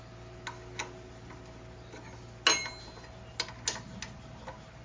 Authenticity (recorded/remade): recorded